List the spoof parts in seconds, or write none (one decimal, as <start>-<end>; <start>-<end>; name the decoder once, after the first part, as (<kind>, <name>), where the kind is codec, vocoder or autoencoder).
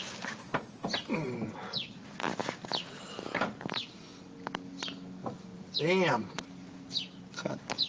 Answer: none